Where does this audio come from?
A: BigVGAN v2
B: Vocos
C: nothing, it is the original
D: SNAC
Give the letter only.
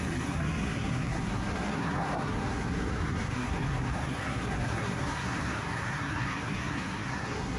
D